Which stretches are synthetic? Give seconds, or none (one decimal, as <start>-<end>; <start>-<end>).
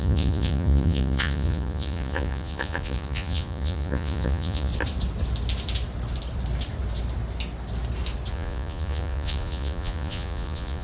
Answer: 0.0-4.7; 8.3-10.8